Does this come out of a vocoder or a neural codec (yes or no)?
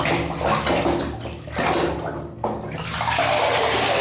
no